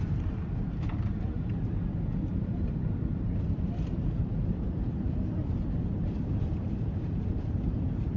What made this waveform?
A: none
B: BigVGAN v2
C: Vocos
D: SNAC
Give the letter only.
B